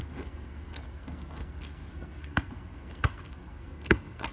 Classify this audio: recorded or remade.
remade